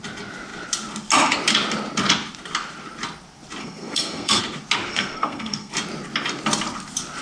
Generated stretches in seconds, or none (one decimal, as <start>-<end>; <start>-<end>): 3.6-4.4; 4.9-5.7